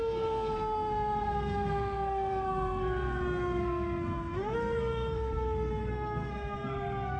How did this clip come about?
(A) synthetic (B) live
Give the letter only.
A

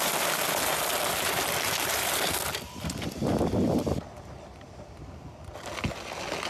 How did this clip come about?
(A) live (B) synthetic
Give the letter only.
A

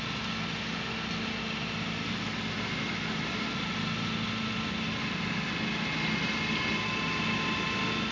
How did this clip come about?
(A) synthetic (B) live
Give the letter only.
B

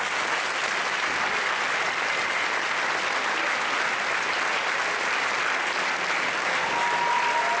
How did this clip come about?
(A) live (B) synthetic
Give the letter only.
A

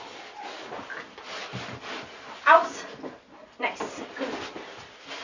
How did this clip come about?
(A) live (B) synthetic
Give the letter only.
A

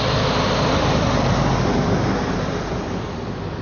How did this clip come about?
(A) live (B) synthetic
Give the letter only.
A